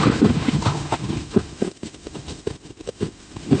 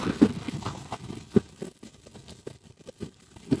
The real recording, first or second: second